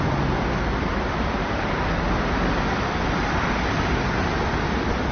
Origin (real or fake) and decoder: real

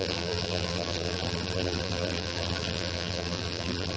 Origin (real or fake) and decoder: fake, vocoder, BigVGAN v2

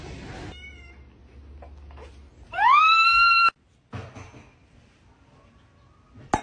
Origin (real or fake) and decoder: real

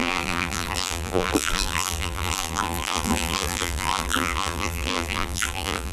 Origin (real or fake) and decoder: fake, vocoder, BigVGAN v2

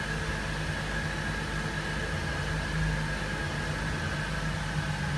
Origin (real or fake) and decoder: real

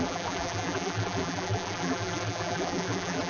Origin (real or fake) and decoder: fake, vocoder, BigVGAN v2